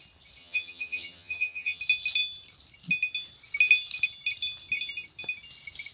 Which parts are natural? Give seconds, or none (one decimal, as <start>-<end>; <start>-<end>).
0.0-0.4; 1.8-5.9